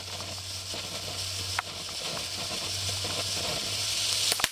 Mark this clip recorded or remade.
recorded